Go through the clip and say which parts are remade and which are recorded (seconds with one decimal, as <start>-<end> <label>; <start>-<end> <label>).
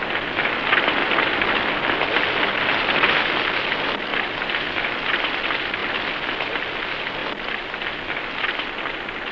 0.0-1.0 recorded; 1.0-1.5 remade; 1.5-9.3 recorded